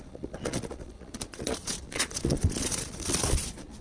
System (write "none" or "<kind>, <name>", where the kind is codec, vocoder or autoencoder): vocoder, Vocos